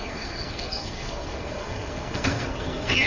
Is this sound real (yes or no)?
no